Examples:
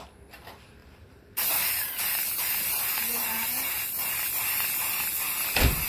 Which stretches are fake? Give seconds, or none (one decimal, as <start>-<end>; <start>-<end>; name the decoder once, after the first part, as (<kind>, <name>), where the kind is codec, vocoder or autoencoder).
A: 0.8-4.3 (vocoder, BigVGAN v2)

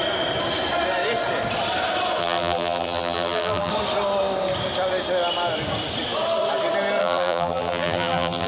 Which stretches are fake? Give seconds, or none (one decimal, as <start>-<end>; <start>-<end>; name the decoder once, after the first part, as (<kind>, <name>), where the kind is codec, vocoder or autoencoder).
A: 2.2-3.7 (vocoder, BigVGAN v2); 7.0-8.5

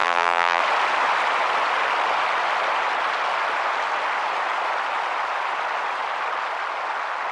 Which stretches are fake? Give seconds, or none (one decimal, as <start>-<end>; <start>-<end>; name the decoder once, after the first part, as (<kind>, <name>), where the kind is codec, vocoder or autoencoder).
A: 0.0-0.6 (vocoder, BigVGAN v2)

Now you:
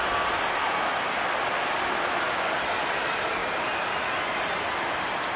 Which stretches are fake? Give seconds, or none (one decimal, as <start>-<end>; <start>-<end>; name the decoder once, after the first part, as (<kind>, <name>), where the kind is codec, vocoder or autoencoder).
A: none

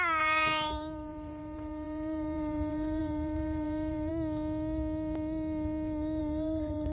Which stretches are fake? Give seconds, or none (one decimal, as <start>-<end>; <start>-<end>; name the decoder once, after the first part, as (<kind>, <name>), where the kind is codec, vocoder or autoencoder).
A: 0.0-4.1 (vocoder, BigVGAN v2); 6.2-6.9